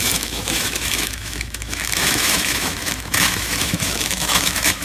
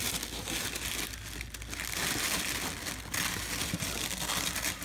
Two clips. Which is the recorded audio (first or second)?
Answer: second